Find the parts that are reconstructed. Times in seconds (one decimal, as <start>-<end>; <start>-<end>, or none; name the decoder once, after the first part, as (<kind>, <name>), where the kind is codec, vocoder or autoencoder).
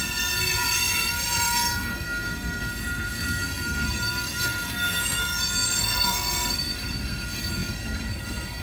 0.0-8.6 (codec, SNAC)